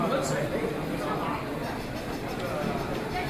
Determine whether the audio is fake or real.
real